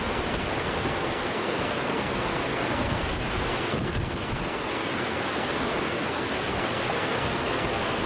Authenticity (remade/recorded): remade